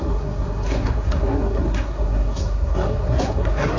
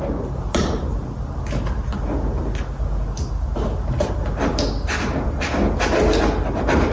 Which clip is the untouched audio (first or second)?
second